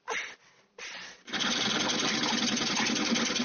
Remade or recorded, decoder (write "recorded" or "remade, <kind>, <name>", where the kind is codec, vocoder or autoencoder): recorded